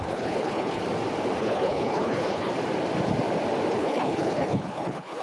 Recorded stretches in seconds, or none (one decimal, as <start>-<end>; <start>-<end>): 0.8-1.4; 2.5-3.7